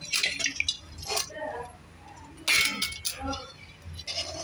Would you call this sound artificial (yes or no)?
no